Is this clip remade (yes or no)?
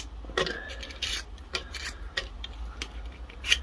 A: no